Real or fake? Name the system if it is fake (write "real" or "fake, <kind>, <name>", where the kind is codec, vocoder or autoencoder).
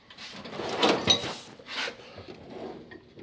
real